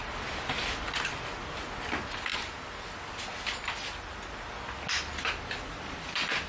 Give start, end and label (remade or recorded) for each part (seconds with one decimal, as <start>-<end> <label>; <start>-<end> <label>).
0.0-6.5 recorded